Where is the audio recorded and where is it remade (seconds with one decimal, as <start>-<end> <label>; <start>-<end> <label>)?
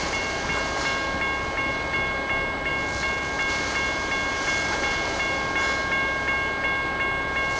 0.0-7.6 recorded